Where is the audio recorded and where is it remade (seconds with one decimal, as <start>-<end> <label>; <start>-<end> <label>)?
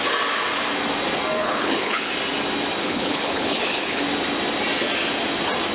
0.0-1.4 recorded; 1.4-2.1 remade; 2.1-2.8 recorded; 2.8-4.0 remade; 4.0-5.7 recorded